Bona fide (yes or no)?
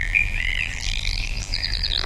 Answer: no